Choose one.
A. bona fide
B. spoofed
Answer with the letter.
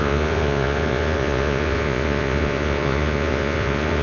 B